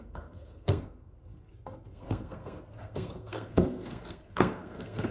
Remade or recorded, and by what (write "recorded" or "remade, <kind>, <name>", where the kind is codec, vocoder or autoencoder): remade, codec, SNAC